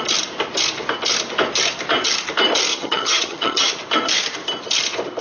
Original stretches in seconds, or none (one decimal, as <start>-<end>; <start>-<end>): 0.0-2.7; 3.7-5.2